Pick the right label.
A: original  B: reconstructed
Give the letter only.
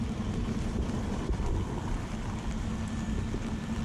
B